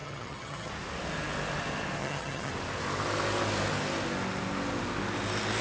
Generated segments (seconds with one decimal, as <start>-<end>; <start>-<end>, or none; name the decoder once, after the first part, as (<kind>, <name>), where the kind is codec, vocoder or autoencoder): 0.0-0.7 (vocoder, HiFi-GAN); 2.0-2.5